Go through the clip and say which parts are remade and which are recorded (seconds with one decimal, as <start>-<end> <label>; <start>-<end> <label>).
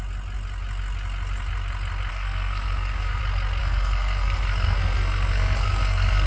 0.0-2.1 recorded; 2.1-3.2 remade; 3.2-3.6 recorded; 3.6-6.3 remade